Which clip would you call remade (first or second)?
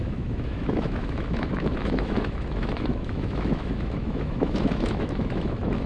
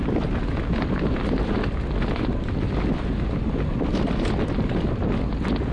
first